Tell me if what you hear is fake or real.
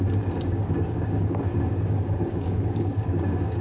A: fake